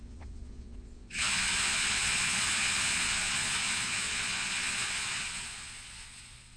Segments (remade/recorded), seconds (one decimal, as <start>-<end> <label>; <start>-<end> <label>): 0.0-6.6 remade